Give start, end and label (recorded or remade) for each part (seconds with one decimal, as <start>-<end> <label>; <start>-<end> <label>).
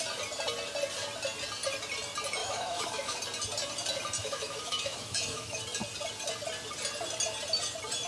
0.0-2.4 recorded; 2.4-3.2 remade; 3.2-4.2 recorded; 4.2-5.6 remade; 5.6-8.1 recorded